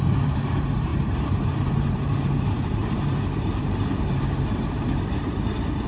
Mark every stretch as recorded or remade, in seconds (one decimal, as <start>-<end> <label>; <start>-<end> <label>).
0.0-5.9 remade